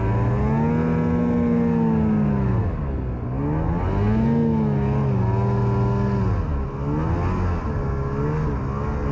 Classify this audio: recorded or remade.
recorded